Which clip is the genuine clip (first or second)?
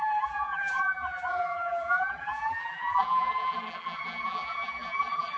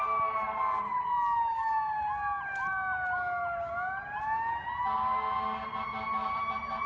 second